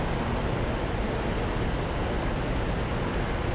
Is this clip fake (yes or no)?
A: no